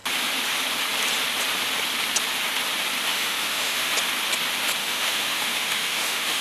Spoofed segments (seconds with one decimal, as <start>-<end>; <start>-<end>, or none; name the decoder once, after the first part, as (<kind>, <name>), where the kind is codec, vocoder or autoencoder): 3.1-3.9 (autoencoder, DAC-VAE); 4.8-6.4